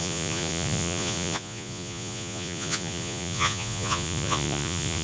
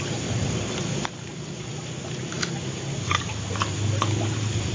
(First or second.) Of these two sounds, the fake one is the first